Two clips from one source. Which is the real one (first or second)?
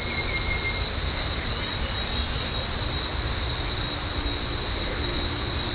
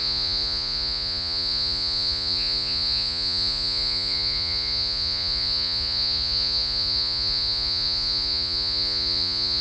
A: first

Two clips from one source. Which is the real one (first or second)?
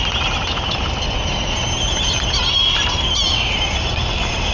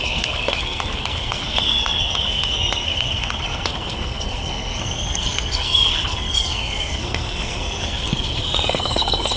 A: first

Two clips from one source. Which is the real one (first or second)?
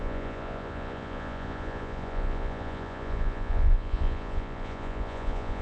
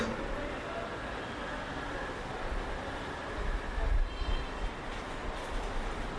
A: second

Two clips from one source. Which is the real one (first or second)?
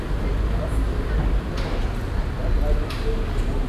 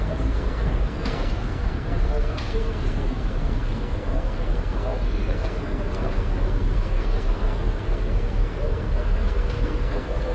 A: first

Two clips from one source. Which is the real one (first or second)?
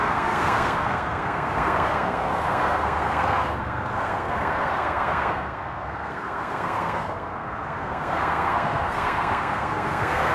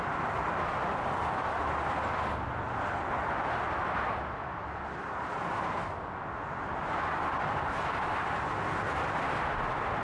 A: second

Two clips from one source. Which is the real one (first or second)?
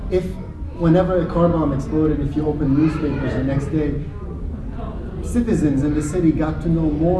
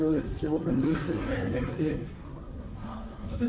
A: first